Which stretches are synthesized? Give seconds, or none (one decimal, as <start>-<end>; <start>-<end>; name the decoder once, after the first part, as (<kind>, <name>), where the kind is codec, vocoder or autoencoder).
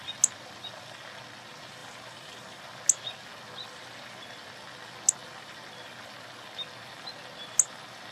1.8-2.6 (vocoder, BigVGAN v2)